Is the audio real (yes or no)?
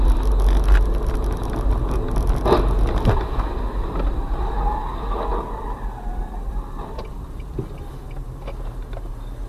yes